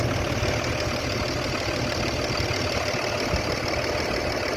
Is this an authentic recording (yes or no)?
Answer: yes